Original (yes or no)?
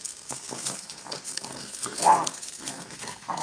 no